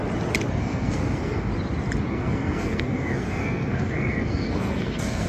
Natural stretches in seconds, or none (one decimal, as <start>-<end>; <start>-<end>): 0.0-0.6; 1.5-2.1